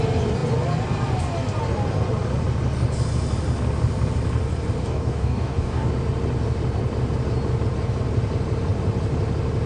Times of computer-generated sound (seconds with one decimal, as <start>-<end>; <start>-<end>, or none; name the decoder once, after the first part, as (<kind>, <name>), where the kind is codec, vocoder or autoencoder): 4.8-5.9 (codec, DAC)